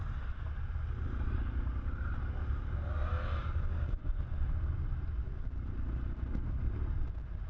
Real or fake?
real